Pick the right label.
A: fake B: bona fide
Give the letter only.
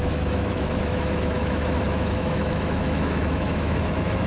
A